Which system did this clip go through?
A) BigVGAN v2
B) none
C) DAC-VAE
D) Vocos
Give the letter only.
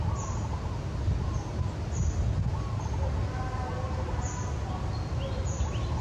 B